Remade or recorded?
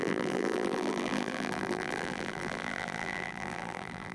remade